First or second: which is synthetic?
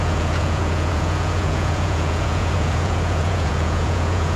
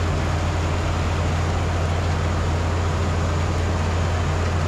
first